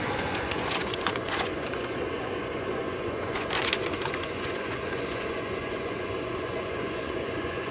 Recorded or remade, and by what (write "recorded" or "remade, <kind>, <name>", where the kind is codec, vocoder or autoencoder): remade, vocoder, Vocos